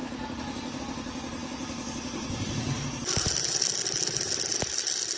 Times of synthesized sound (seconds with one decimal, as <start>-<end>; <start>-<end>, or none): none